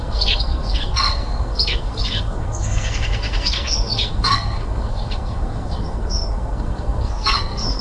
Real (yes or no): no